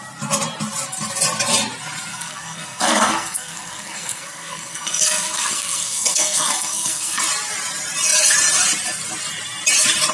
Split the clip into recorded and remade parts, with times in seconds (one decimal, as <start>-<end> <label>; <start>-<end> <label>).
0.0-2.1 recorded; 2.1-7.2 remade; 7.2-10.1 recorded

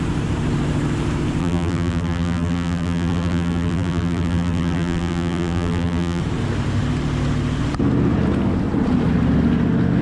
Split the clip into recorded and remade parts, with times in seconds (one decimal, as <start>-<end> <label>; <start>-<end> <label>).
0.0-1.4 recorded; 1.4-6.2 remade; 6.2-10.0 recorded

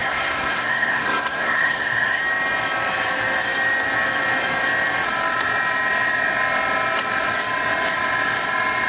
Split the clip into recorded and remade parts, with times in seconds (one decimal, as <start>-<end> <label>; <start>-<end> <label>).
0.0-2.2 remade; 2.2-8.9 recorded

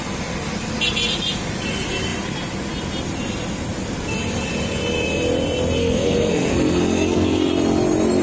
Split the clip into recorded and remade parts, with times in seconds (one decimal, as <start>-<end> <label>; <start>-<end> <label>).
0.0-5.8 recorded; 5.8-7.5 remade; 7.5-8.2 recorded